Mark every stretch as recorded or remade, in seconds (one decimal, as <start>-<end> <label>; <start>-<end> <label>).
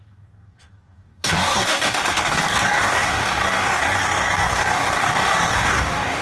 0.0-6.2 remade